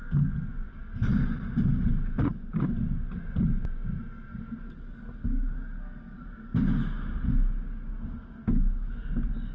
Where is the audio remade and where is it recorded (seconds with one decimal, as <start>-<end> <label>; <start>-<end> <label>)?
0.0-9.5 recorded